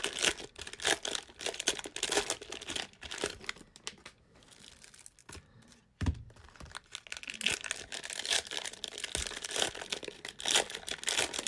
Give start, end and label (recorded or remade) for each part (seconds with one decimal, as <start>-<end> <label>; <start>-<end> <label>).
0.0-11.5 recorded